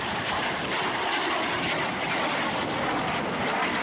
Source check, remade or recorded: recorded